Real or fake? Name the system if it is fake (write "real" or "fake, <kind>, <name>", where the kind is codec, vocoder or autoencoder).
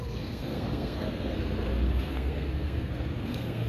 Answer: fake, codec, SNAC